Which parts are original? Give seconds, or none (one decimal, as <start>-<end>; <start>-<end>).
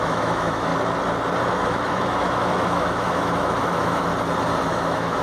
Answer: 0.7-1.4; 4.1-4.7